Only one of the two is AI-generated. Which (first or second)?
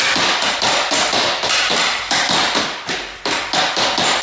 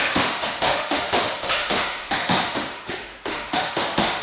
second